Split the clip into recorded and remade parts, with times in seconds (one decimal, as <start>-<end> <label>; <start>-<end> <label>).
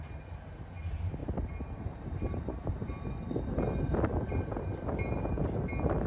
0.0-6.1 recorded